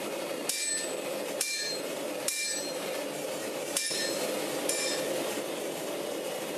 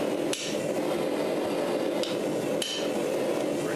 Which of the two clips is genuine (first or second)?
second